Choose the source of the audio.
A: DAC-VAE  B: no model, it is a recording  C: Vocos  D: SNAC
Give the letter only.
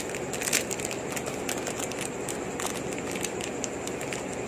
B